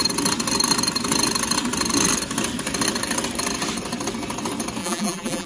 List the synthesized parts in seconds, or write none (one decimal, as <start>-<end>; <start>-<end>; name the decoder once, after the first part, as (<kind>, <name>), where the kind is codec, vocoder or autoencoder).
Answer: 4.8-5.5 (vocoder, BigVGAN v2)